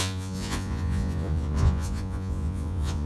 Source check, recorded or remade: remade